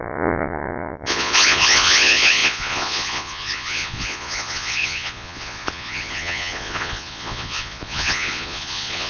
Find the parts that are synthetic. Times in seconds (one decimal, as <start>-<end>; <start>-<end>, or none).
0.0-9.1